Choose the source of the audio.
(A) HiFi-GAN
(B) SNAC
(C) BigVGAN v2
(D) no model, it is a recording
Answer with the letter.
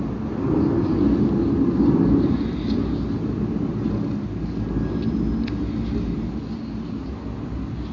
D